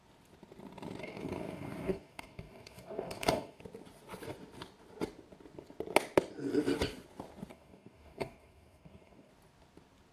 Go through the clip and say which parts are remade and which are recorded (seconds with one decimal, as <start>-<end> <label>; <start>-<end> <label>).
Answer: 0.0-1.0 recorded; 1.0-3.6 remade; 3.6-7.5 recorded; 7.5-9.3 remade; 9.3-10.1 recorded